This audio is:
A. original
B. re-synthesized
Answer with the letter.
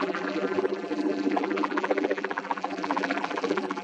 B